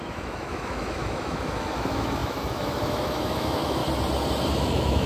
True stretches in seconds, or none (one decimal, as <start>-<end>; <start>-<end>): 3.8-4.5